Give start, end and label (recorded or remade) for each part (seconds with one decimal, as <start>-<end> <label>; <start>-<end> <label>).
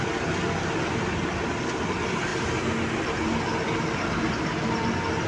0.0-5.3 recorded